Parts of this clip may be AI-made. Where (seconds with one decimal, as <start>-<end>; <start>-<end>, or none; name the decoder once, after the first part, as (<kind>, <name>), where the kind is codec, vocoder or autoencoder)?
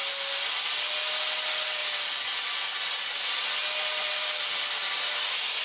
0.0-1.8 (vocoder, BigVGAN v2); 4.1-5.6